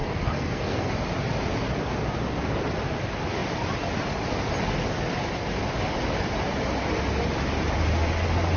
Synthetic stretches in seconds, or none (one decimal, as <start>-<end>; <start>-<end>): 0.0-0.9